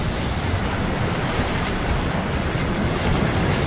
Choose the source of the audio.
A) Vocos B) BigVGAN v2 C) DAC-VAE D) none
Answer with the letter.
D